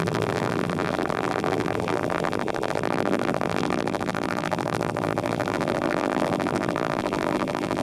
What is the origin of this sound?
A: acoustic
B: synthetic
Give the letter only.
B